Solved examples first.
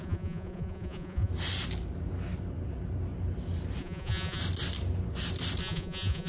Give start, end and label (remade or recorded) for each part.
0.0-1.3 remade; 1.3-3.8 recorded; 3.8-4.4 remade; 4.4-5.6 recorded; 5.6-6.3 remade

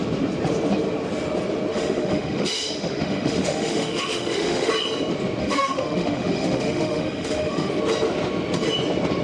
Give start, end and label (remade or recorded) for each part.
0.0-1.7 recorded; 1.7-4.7 remade; 4.7-5.4 recorded; 5.4-7.7 remade; 7.7-9.2 recorded

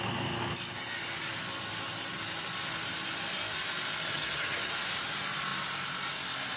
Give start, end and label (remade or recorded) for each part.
0.0-4.1 recorded; 4.1-4.7 remade; 4.7-6.6 recorded